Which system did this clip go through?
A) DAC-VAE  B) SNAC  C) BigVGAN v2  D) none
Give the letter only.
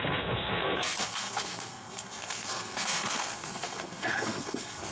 B